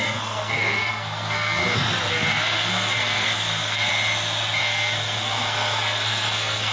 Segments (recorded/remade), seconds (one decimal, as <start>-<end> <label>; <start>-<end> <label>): 0.0-1.6 remade; 1.6-2.1 recorded; 2.1-3.9 remade; 3.9-4.6 recorded; 4.6-6.7 remade